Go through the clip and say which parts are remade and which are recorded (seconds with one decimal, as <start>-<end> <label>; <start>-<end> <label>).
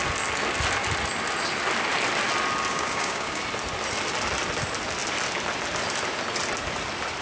0.0-2.7 recorded; 2.7-3.4 remade; 3.4-7.2 recorded